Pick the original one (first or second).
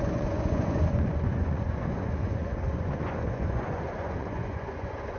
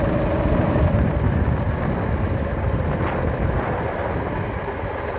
second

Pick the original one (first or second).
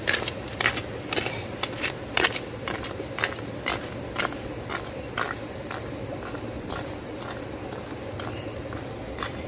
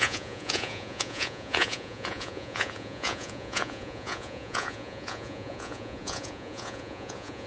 first